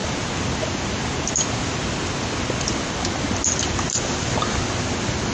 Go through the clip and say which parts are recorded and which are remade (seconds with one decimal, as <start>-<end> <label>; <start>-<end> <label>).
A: 0.0-5.3 recorded